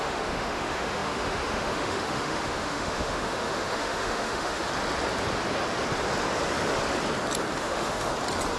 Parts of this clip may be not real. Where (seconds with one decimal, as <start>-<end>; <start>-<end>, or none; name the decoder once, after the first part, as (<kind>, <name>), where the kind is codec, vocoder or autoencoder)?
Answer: 0.0-4.6 (autoencoder, DAC-VAE); 7.6-8.1